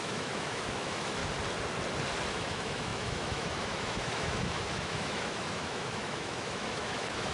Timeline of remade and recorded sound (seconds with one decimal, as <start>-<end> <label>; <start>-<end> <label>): 0.0-1.2 remade; 1.2-2.3 recorded; 2.3-7.3 remade